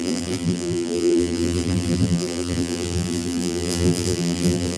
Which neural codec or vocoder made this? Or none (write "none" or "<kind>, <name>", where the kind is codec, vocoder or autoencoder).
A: vocoder, BigVGAN v2